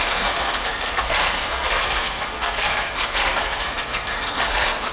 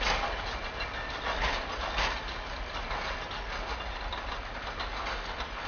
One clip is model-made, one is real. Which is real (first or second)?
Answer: second